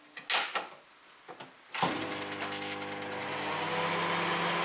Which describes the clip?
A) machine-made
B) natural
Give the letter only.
B